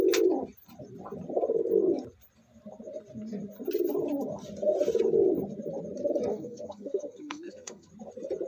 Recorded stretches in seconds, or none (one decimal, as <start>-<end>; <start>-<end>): 0.0-6.3; 7.9-8.5